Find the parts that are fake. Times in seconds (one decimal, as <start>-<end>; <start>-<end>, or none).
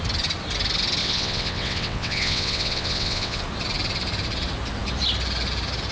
1.0-3.4